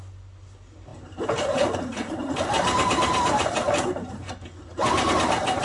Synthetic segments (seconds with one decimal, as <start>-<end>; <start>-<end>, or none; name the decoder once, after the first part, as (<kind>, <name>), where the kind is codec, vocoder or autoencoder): 0.9-4.3 (vocoder, BigVGAN v2); 4.7-5.6

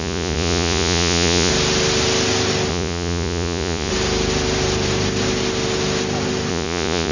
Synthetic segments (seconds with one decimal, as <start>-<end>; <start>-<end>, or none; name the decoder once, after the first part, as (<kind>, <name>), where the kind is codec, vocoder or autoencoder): 0.0-1.5 (vocoder, Vocos); 2.7-3.9; 6.5-7.1

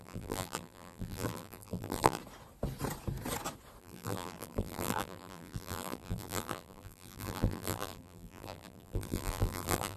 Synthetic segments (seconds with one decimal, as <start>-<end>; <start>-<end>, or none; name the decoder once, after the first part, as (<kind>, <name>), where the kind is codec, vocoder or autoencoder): 0.0-2.2 (vocoder, BigVGAN v2); 3.8-10.0

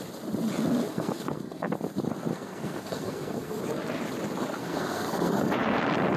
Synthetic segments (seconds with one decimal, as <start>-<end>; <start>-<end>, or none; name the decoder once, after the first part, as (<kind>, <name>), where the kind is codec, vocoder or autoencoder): 0.9-1.7 (codec, SNAC); 2.3-3.6; 4.6-5.8

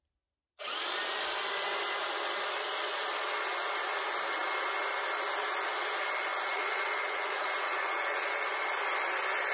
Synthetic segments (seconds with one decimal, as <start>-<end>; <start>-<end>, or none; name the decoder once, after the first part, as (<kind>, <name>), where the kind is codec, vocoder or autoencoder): 6.3-8.4 (vocoder, Vocos)